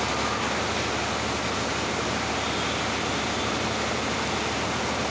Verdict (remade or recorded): recorded